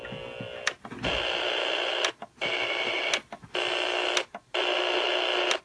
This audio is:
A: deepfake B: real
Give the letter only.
B